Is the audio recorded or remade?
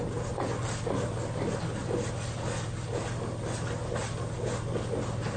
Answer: recorded